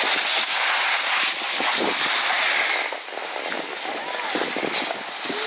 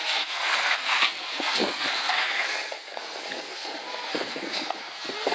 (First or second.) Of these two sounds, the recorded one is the first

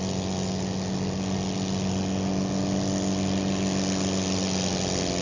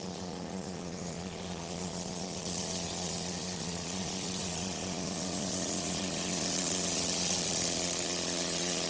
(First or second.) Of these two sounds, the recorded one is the first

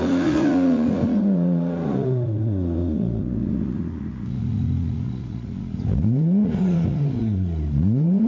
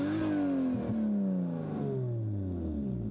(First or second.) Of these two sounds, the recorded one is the second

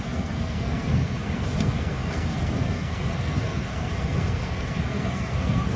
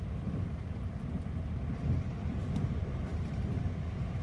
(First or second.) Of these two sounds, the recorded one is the second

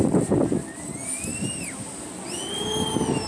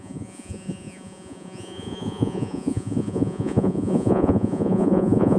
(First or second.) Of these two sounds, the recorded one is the first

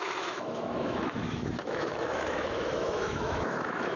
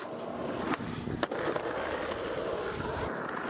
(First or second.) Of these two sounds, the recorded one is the second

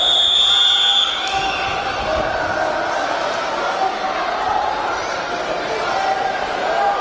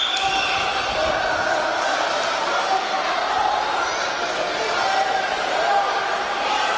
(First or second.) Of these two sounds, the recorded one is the first